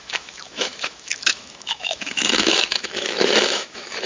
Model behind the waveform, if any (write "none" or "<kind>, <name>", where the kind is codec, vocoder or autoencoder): autoencoder, DAC-VAE